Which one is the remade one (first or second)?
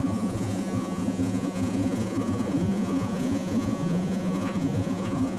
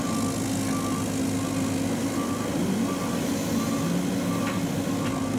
first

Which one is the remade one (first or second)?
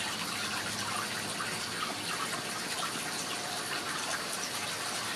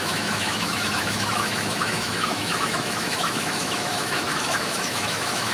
second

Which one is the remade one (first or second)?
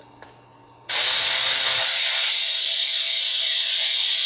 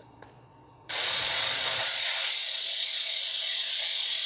second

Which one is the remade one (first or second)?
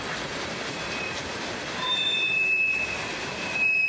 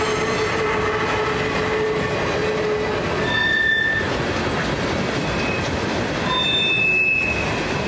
first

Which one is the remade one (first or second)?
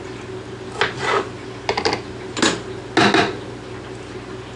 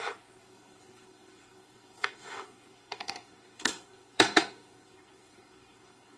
second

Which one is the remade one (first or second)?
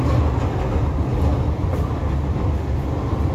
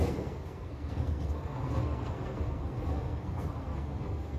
second